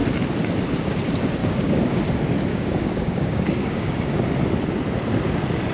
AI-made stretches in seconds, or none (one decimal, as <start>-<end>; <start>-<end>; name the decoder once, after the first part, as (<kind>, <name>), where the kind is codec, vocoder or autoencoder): 1.4-2.0 (codec, DAC); 2.5-4.0